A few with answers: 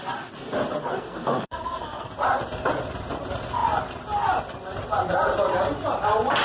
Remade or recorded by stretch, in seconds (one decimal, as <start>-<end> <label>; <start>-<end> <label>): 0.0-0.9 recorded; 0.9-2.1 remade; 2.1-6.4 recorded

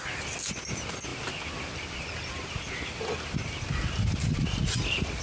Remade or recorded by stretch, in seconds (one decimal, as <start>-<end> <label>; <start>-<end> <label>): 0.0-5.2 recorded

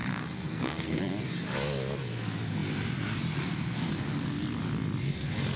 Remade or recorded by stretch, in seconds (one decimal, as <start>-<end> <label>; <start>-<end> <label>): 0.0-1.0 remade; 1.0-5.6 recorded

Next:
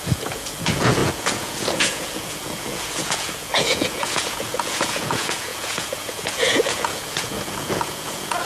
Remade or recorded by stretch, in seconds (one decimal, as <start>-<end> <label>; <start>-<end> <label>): 0.0-8.4 remade

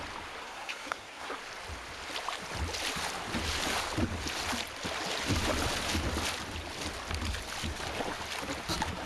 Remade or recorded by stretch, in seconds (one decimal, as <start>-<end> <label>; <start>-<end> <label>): 0.0-0.4 recorded; 0.4-1.4 remade; 1.4-9.1 recorded

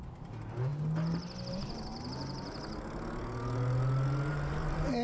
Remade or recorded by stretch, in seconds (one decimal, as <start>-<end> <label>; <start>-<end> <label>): 0.0-0.7 remade; 0.7-1.5 recorded; 1.5-1.9 remade; 1.9-4.3 recorded; 4.3-5.0 remade

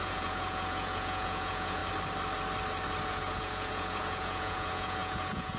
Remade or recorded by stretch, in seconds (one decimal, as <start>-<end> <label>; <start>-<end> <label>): 0.0-1.8 remade; 1.8-3.1 recorded; 3.1-5.6 remade

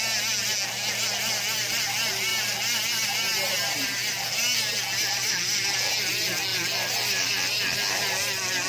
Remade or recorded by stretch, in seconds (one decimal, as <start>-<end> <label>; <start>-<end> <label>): 0.0-6.5 recorded; 6.5-7.3 remade; 7.3-8.7 recorded